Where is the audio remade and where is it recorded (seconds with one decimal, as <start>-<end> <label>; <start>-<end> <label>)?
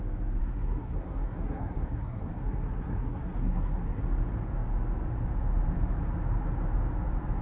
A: 0.0-0.4 recorded; 0.4-4.0 remade; 4.0-7.4 recorded